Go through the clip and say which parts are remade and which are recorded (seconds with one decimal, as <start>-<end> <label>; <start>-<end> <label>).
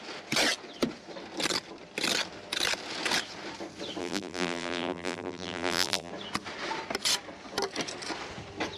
0.0-4.0 recorded; 4.0-6.1 remade; 6.1-8.8 recorded